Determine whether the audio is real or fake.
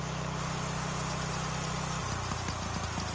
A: real